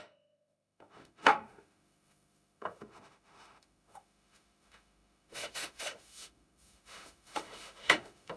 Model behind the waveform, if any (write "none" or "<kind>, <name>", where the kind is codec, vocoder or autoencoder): autoencoder, DAC-VAE